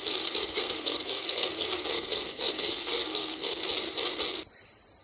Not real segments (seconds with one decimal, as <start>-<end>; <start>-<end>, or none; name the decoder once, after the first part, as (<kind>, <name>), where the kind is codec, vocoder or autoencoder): 0.0-3.6 (codec, SNAC)